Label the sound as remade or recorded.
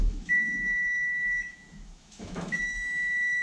remade